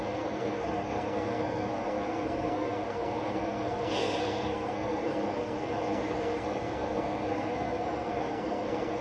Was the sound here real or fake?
fake